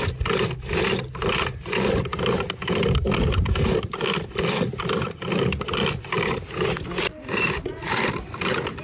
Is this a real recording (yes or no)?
yes